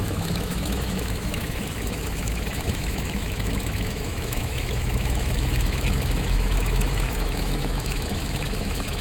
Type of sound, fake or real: fake